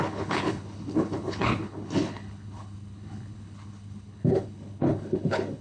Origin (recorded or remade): remade